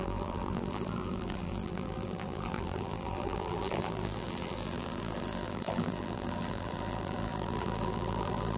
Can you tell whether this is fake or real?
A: fake